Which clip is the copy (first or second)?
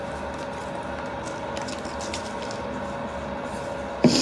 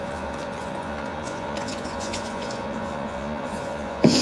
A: second